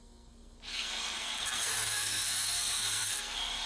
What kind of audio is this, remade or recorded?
remade